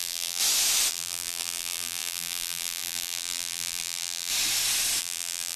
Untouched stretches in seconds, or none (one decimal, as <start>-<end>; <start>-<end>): 0.4-0.9; 4.3-5.0